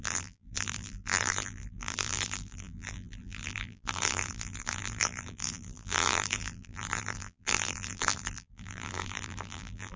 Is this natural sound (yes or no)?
no